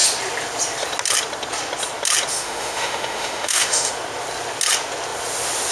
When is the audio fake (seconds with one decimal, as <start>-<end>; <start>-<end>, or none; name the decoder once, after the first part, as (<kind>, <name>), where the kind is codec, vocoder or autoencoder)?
2.3-3.9 (autoencoder, DAC-VAE)